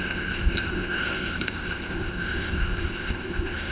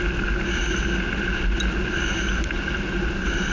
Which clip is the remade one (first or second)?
first